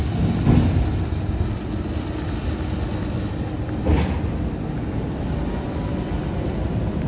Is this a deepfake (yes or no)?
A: no